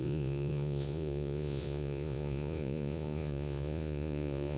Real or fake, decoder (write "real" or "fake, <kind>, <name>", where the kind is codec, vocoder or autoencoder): fake, vocoder, Vocos